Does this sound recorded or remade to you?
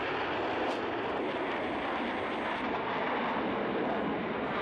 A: recorded